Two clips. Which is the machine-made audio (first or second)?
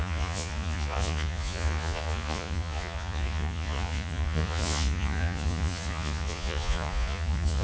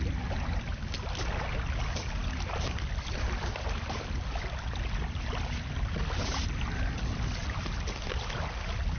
first